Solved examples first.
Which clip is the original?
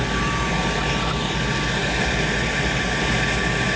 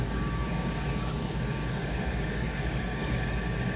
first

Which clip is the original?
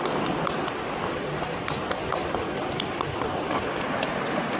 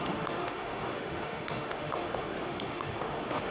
first